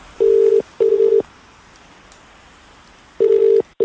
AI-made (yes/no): no